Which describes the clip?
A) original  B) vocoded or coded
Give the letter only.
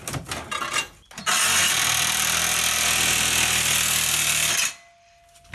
A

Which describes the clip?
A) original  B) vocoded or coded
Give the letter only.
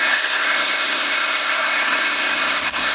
B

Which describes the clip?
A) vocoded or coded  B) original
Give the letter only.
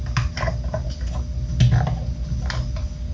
B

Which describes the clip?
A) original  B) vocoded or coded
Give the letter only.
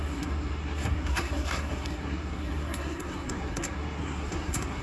B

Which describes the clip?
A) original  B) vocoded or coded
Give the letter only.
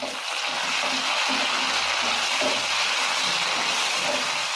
A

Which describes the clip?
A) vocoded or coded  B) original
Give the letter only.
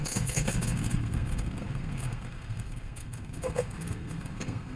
A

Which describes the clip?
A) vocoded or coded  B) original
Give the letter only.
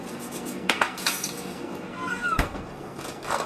A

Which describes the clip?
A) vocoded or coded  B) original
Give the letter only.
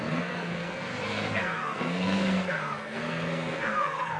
A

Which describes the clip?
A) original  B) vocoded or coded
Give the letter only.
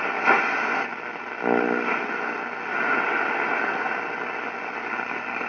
A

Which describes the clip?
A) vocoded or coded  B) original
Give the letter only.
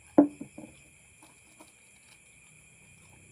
B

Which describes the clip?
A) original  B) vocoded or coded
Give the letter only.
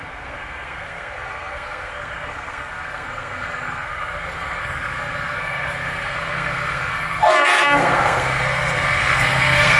B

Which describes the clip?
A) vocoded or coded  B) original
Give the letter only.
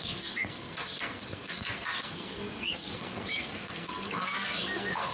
A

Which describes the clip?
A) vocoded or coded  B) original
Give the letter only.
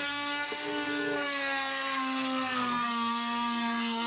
A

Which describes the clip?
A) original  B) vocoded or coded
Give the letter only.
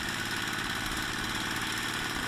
A